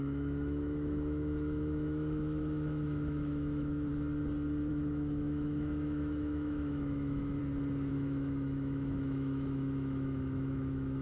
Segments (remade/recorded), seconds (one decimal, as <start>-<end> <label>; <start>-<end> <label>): 0.0-3.9 remade; 3.9-4.7 recorded; 4.7-7.4 remade; 7.4-7.9 recorded; 7.9-11.0 remade

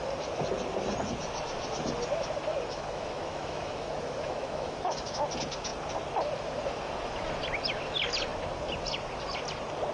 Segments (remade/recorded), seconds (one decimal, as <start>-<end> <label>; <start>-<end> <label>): 0.0-2.5 recorded; 2.5-5.2 remade; 5.2-9.9 recorded

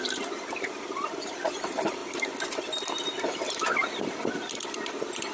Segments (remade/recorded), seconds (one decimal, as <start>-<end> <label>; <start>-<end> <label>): 0.0-5.3 recorded

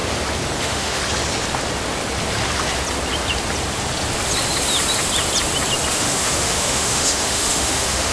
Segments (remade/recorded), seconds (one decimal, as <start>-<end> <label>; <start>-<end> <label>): 0.0-0.6 recorded; 0.6-1.0 remade; 1.0-5.9 recorded; 5.9-8.1 remade

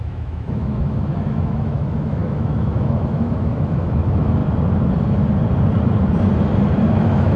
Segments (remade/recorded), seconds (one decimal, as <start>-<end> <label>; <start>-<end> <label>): 0.0-4.4 remade; 4.4-6.9 recorded; 6.9-7.4 remade

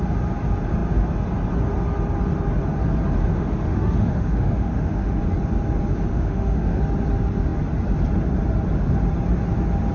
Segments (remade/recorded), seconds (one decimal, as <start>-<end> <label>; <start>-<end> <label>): 0.0-3.3 recorded; 3.3-5.2 remade; 5.2-6.1 recorded; 6.1-6.8 remade; 6.8-9.9 recorded

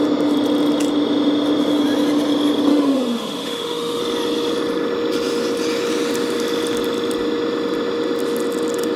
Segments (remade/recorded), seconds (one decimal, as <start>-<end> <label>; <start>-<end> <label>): 0.0-2.7 recorded; 2.7-4.0 remade; 4.0-9.0 recorded